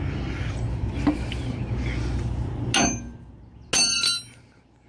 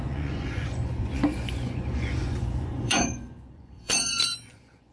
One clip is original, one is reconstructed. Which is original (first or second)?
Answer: first